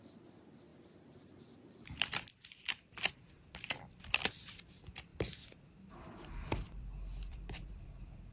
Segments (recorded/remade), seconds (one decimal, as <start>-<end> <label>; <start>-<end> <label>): 0.0-5.1 remade; 5.1-6.2 recorded; 6.2-8.3 remade